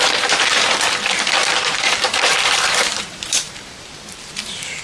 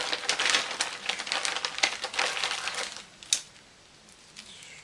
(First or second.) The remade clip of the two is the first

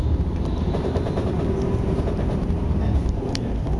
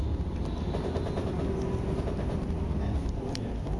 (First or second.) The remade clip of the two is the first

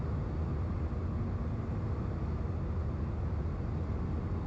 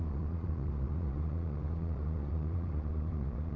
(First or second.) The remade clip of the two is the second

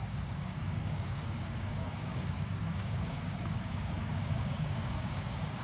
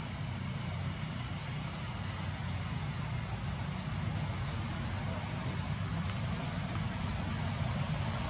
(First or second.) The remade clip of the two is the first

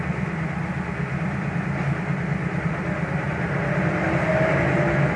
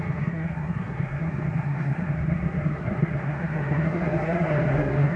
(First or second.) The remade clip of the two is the second